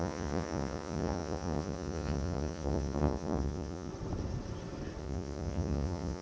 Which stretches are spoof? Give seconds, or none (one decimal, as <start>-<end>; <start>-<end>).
0.0-3.9; 5.0-6.2